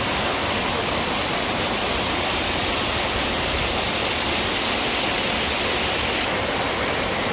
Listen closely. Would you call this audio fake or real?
real